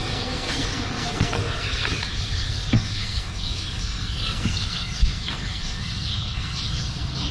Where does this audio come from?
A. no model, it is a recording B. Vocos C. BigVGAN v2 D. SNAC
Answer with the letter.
D